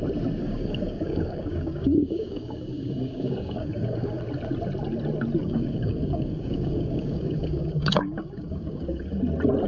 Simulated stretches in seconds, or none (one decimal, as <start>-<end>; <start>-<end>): 0.4-4.2; 5.4-9.2